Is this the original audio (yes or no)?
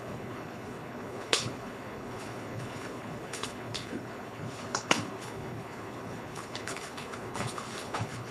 no